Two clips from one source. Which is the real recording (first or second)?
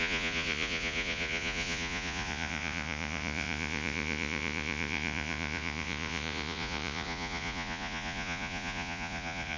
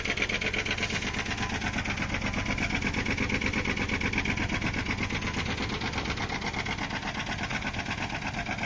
second